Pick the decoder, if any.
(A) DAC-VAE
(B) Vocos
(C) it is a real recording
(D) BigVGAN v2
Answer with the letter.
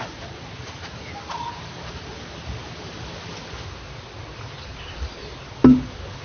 C